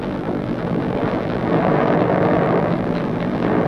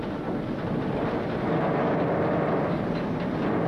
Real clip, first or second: second